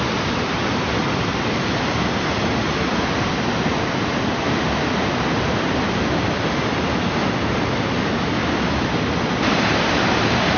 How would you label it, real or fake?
real